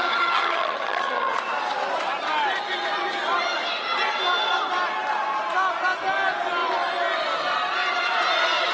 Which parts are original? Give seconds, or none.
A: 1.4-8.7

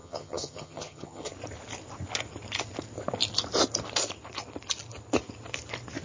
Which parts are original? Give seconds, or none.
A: 1.3-6.0

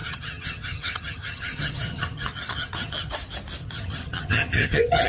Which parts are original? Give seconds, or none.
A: 3.1-3.6

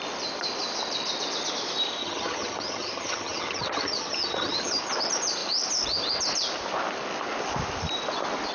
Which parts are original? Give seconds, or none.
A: 0.0-2.0; 4.8-8.5

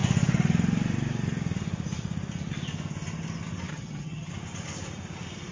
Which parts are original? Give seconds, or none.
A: 0.0-3.7; 4.3-5.5